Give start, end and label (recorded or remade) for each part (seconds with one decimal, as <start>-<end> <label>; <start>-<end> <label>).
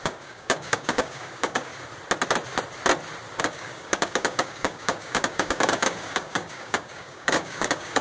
0.0-1.7 remade; 1.7-3.4 recorded; 3.4-8.0 remade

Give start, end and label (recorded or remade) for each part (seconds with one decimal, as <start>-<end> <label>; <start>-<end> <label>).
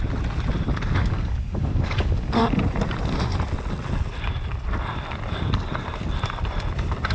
0.0-1.0 recorded; 1.0-2.4 remade; 2.4-7.1 recorded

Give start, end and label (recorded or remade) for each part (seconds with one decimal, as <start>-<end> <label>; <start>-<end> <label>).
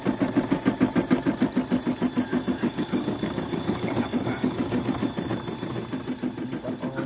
0.0-2.3 recorded; 2.3-4.8 remade; 4.8-7.1 recorded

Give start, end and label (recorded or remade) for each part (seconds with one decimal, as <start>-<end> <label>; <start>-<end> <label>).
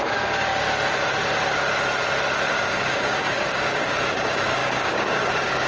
0.0-0.5 remade; 0.5-2.5 recorded; 2.5-5.7 remade